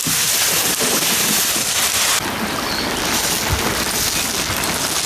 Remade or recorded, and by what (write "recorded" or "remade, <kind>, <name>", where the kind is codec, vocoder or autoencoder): recorded